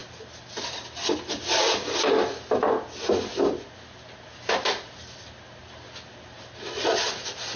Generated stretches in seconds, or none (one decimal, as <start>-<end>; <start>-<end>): none